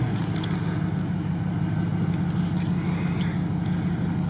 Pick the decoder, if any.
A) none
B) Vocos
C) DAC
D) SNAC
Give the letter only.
A